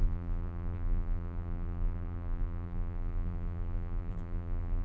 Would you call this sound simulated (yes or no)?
yes